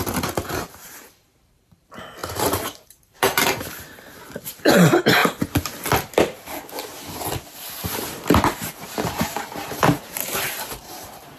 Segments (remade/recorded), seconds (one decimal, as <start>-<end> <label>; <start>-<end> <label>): 0.0-5.2 remade; 5.2-9.1 recorded; 9.1-11.4 remade